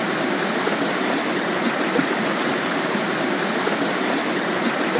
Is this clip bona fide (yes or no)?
yes